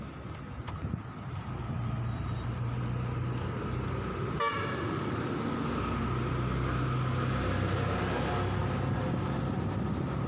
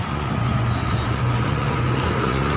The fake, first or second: second